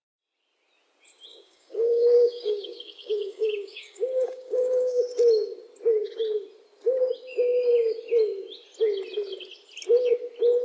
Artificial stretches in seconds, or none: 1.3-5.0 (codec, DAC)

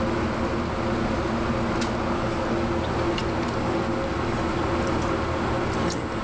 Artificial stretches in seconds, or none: none